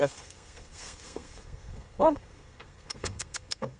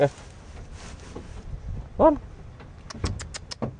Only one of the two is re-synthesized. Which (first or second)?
first